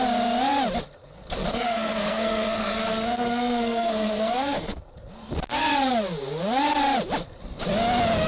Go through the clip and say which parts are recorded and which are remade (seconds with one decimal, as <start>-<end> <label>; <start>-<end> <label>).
0.0-1.5 recorded; 1.5-4.8 remade; 4.8-8.3 recorded